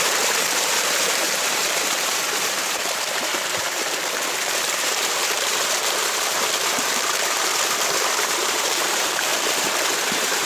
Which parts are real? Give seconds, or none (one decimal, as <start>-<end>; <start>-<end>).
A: 7.5-8.3; 9.3-10.1